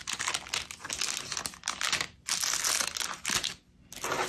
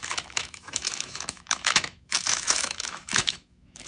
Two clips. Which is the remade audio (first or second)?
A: second